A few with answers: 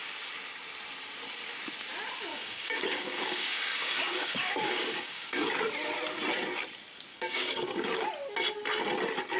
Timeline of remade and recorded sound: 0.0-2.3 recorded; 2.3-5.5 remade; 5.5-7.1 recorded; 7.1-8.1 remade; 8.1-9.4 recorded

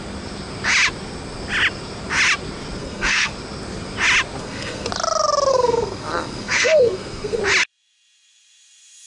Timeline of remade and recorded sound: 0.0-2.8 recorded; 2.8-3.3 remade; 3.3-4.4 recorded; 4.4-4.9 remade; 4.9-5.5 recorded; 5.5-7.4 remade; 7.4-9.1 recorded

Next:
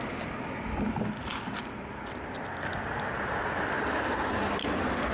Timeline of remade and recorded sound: 0.0-1.3 recorded; 1.3-4.3 remade; 4.3-5.1 recorded

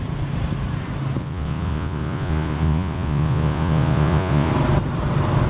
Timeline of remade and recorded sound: 0.0-1.2 recorded; 1.2-4.5 remade; 4.5-5.5 recorded

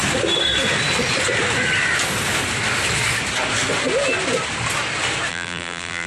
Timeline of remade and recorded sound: 0.0-5.3 recorded; 5.3-6.1 remade